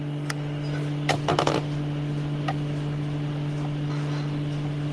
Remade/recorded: recorded